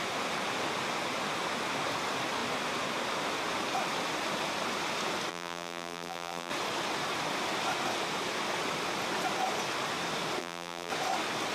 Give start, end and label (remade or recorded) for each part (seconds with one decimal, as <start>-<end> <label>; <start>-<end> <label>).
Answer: 0.0-5.3 recorded; 5.3-6.5 remade; 6.5-10.4 recorded; 10.4-10.9 remade; 10.9-11.5 recorded